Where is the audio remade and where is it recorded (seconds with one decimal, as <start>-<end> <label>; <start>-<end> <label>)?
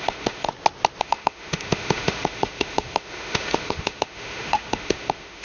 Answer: 0.0-0.5 remade; 0.5-1.0 recorded; 1.0-5.4 remade